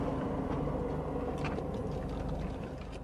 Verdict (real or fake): real